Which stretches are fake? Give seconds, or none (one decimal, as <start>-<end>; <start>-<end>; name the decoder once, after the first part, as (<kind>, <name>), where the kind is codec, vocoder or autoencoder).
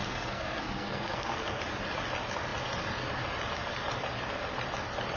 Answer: 0.0-1.6 (codec, SNAC)